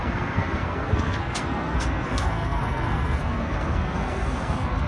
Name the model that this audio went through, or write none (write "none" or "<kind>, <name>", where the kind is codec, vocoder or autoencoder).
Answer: codec, SNAC